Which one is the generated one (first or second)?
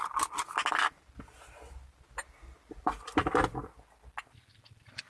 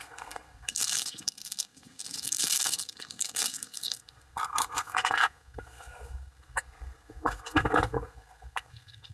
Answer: second